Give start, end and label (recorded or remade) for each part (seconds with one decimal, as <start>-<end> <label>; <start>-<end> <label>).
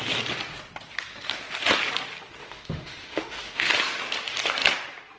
0.0-2.4 recorded; 2.4-3.7 remade; 3.7-5.2 recorded